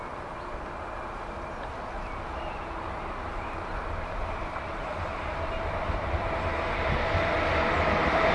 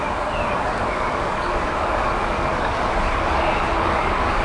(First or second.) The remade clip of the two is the second